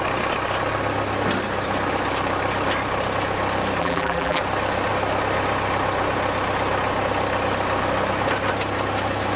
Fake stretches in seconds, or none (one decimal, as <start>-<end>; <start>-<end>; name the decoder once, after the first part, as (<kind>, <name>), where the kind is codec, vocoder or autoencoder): 3.8-4.4 (vocoder, BigVGAN v2)